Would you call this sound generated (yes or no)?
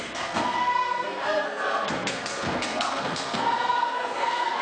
yes